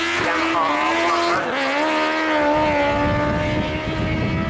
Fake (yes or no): no